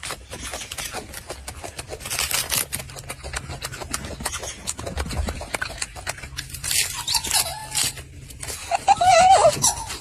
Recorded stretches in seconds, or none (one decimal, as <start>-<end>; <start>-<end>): 0.0-10.0